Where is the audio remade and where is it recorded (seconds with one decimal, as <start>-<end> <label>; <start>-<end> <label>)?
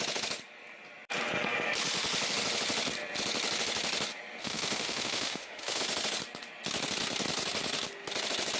0.0-4.4 recorded; 4.4-5.8 remade; 5.8-8.6 recorded